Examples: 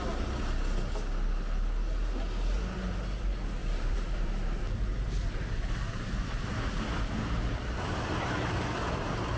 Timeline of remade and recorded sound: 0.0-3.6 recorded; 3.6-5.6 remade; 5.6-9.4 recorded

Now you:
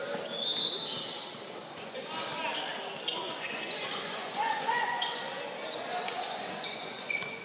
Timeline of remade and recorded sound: 0.0-1.6 recorded; 1.6-2.3 remade; 2.3-3.1 recorded; 3.1-5.5 remade; 5.5-5.9 recorded; 5.9-7.4 remade

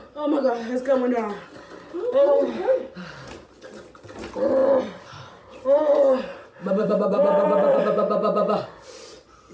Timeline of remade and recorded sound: 0.0-4.6 recorded; 4.6-5.2 remade; 5.2-6.6 recorded; 6.6-8.9 remade; 8.9-9.5 recorded

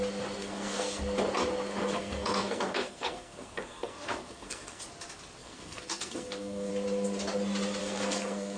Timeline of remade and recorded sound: 0.0-0.4 recorded; 0.4-1.0 remade; 1.0-1.8 recorded; 1.8-4.8 remade; 4.8-5.4 recorded; 5.4-6.7 remade; 6.7-7.8 recorded; 7.8-8.6 remade

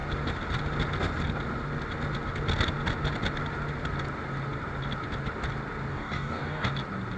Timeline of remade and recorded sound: 0.0-5.9 recorded; 5.9-6.7 remade; 6.7-7.2 recorded

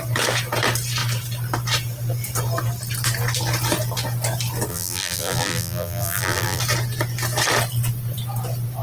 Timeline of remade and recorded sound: 0.0-4.7 recorded; 4.7-6.6 remade; 6.6-8.8 recorded

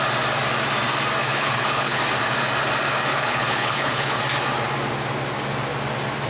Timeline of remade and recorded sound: 0.0-1.2 recorded; 1.2-2.0 remade; 2.0-3.1 recorded; 3.1-4.2 remade; 4.2-6.3 recorded

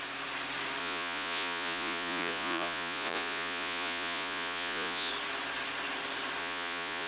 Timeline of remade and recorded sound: 0.0-0.8 recorded; 0.8-5.1 remade; 5.1-6.4 recorded; 6.4-7.1 remade